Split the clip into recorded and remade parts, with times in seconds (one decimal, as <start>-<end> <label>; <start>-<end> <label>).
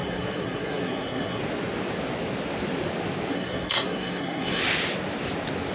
0.0-1.4 remade; 1.4-3.3 recorded; 3.3-4.6 remade; 4.6-5.7 recorded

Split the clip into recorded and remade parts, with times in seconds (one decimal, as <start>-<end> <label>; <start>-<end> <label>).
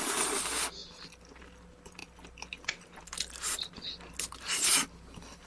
0.0-5.5 recorded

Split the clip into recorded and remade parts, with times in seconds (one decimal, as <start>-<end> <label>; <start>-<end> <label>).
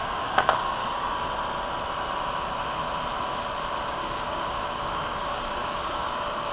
0.0-0.8 remade; 0.8-3.9 recorded; 3.9-6.5 remade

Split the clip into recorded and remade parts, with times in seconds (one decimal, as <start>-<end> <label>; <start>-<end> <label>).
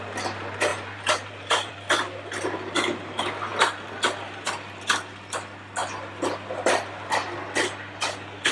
0.0-0.7 recorded; 0.7-1.7 remade; 1.7-8.5 recorded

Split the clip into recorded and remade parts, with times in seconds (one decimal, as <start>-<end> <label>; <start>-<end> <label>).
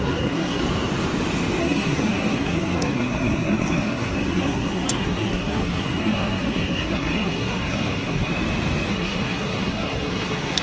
0.0-0.6 remade; 0.6-1.6 recorded; 1.6-8.3 remade; 8.3-8.9 recorded; 8.9-10.6 remade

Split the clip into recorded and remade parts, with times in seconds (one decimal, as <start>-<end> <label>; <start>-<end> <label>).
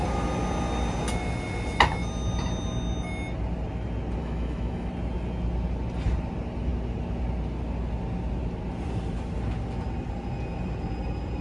0.0-4.2 recorded; 4.2-4.9 remade; 4.9-11.4 recorded